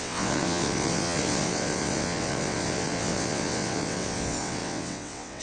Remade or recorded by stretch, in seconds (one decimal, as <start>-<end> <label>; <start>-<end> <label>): 0.0-5.4 remade